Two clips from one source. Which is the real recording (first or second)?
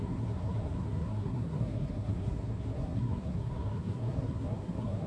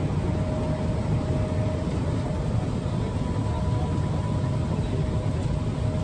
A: second